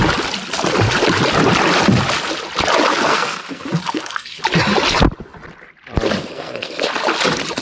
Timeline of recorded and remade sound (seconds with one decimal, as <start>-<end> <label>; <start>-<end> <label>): 0.0-2.9 recorded; 2.9-4.4 remade; 4.4-6.2 recorded; 6.2-6.8 remade; 6.8-7.6 recorded